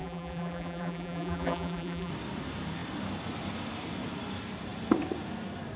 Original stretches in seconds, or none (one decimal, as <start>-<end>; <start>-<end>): 2.1-5.8